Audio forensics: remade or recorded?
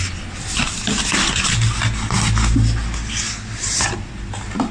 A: recorded